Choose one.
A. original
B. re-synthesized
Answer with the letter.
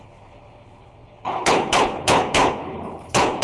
B